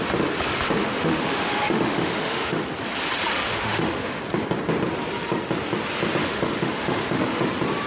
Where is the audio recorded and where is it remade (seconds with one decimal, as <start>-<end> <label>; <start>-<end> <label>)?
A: 0.0-0.8 recorded; 0.8-2.6 remade; 2.6-3.5 recorded; 3.5-4.2 remade; 4.2-6.2 recorded; 6.2-7.4 remade; 7.4-7.9 recorded